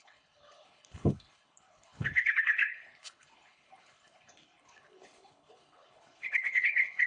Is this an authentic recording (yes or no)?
no